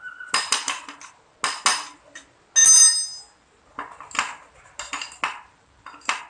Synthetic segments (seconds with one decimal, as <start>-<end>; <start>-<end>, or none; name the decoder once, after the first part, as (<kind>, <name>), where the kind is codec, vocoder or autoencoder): none